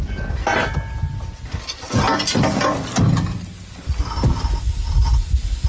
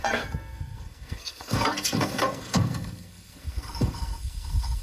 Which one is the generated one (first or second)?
second